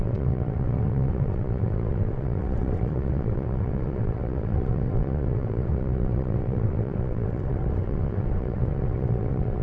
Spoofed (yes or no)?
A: yes